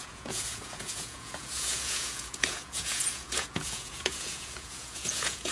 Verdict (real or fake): fake